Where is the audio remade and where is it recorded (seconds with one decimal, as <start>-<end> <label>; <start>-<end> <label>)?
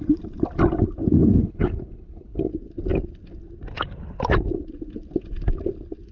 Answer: 0.0-1.2 recorded; 1.2-2.5 remade; 2.5-6.1 recorded